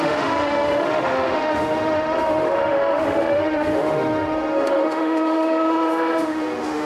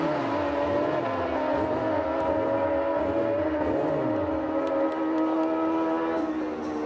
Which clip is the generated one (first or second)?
first